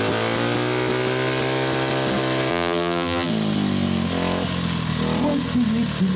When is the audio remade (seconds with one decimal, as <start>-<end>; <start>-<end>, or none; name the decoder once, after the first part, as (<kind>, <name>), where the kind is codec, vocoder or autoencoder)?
2.5-3.3 (vocoder, BigVGAN v2)